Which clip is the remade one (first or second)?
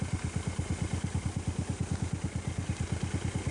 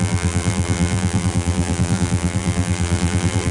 second